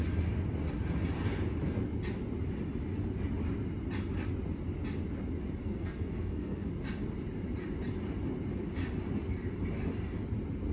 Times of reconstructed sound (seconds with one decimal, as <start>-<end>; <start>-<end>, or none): 5.6-6.7